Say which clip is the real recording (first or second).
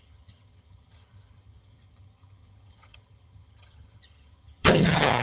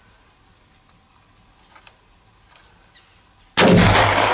second